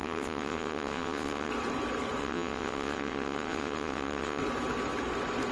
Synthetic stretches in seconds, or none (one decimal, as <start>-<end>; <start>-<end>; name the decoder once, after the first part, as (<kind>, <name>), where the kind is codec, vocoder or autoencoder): 0.0-1.5 (vocoder, WaveNeXt); 2.2-4.4